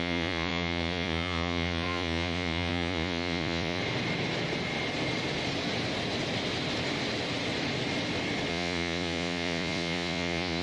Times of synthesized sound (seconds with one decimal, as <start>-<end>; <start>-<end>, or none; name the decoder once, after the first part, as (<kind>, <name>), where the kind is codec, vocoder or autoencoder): 0.0-3.8 (vocoder, Vocos); 8.5-10.6